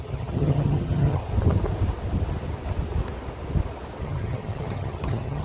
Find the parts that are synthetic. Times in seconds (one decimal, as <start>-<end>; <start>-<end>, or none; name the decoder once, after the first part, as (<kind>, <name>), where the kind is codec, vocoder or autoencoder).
0.0-1.2 (vocoder, HiFi-GAN); 4.0-5.4